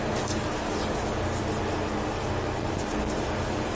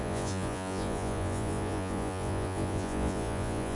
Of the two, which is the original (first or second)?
first